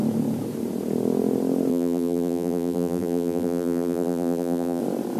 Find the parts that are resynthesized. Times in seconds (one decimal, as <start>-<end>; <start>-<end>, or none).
1.7-4.8

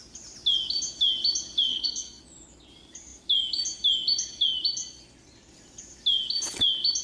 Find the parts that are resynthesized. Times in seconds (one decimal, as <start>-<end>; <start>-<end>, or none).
1.7-2.2